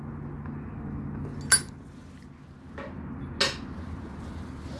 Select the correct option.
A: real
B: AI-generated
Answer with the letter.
A